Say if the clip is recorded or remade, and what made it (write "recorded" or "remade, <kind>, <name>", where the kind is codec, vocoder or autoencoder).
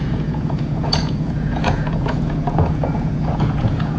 remade, vocoder, Vocos